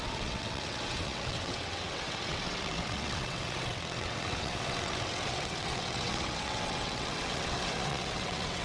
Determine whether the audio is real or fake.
fake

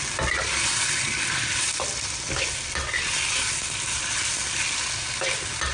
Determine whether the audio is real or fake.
real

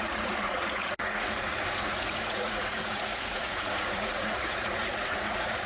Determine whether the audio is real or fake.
fake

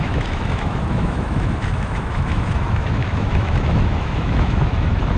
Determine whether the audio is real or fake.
fake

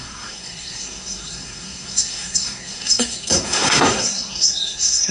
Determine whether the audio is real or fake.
fake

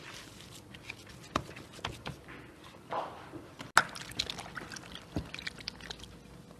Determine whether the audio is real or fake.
real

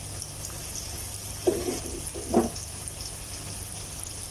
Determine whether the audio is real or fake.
real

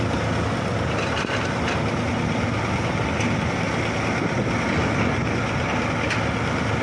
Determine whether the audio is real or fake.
real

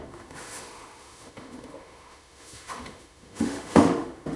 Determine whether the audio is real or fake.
fake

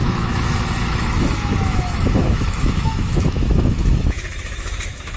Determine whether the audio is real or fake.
fake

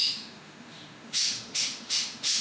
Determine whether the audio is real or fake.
fake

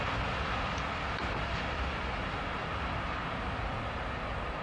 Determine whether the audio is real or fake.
real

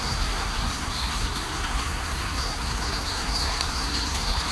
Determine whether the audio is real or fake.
fake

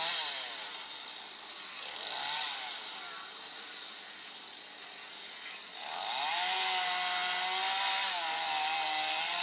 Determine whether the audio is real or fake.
real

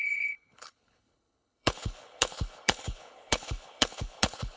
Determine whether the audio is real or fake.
fake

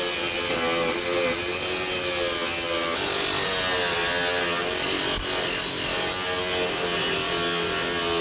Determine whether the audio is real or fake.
real